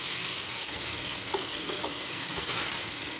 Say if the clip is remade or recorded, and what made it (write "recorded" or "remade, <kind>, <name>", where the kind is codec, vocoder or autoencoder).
remade, codec, SNAC